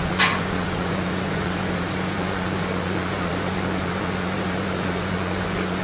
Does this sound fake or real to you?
fake